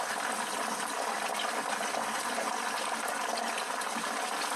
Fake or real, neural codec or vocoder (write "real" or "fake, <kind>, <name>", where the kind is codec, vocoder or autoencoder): real